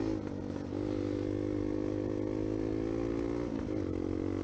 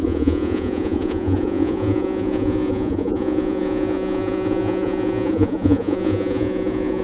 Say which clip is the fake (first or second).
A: second